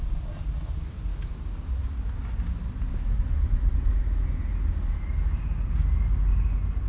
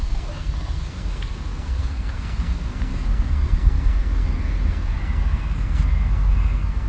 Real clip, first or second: first